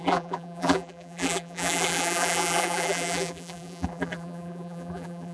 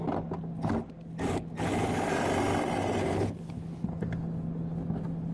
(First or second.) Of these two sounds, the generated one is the first